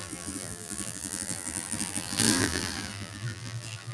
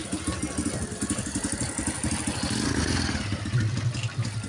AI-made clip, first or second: first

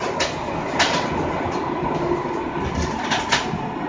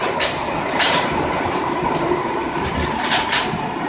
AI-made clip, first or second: second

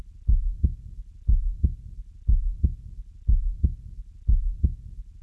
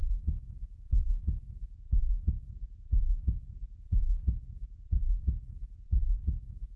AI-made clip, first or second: second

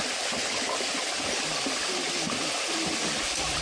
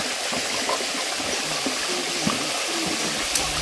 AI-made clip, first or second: first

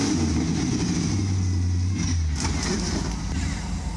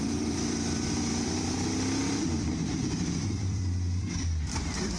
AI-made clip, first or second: second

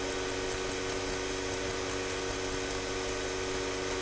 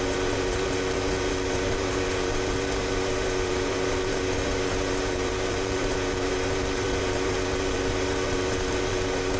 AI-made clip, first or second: second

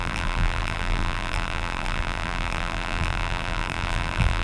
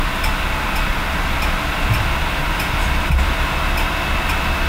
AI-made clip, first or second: first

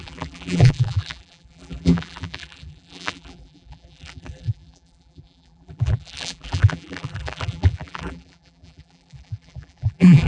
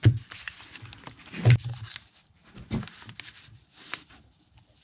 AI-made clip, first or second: first